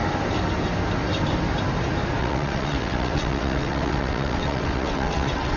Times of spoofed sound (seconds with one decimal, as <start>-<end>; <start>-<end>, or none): 2.2-5.6